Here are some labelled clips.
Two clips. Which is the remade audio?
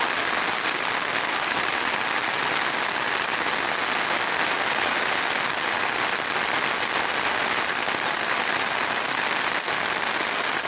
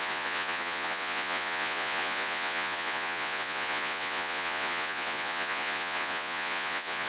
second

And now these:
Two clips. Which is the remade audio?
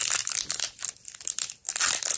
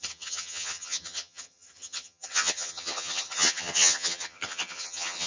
second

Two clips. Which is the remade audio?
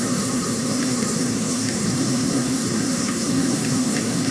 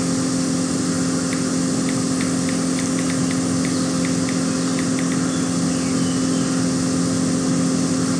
first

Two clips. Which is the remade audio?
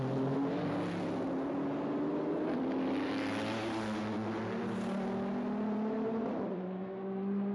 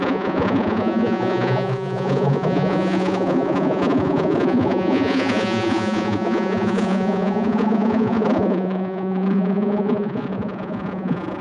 second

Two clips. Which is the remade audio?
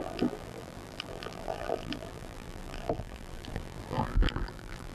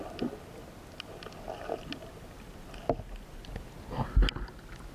first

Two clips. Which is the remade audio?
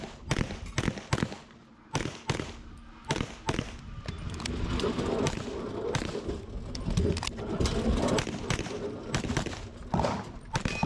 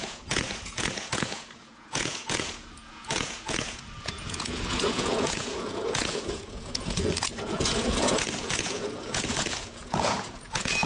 second